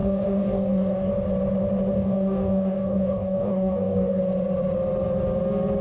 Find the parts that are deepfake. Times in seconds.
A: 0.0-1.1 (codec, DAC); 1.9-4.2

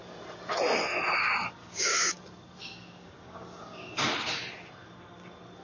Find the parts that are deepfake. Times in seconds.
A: 1.6-2.2 (codec, DAC); 2.6-4.0

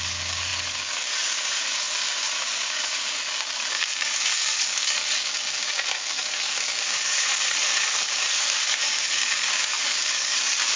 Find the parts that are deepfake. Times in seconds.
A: 0.0-10.8 (codec, DAC)

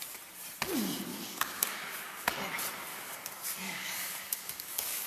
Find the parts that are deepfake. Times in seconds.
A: 1.1-2.3 (codec, DAC); 2.9-5.1